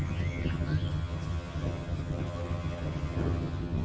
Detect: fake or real fake